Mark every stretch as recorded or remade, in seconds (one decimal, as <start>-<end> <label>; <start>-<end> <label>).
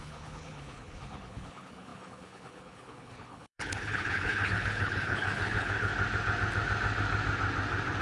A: 0.0-5.9 remade; 5.9-8.0 recorded